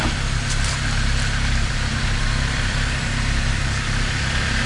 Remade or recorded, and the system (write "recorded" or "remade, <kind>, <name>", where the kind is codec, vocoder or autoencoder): remade, vocoder, BigVGAN v2